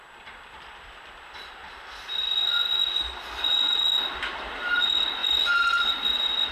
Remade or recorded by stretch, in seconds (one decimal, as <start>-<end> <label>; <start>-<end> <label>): 0.0-1.6 remade; 1.6-4.1 recorded; 4.1-6.5 remade